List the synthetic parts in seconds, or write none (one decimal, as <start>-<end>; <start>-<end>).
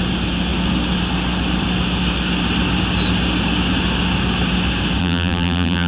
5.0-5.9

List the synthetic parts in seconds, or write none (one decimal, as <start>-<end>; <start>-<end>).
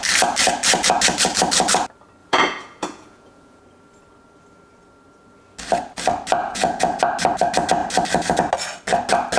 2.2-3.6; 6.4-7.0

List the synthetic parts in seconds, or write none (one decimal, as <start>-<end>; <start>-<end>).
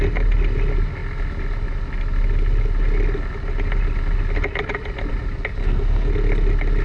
5.6-6.1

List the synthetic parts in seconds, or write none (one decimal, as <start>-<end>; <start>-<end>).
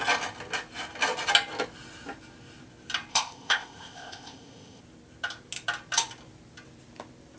3.1-4.8